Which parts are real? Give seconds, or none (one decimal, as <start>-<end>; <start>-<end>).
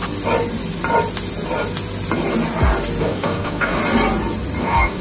0.0-3.0; 3.8-4.6